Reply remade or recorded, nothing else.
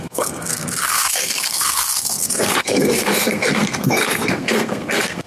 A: remade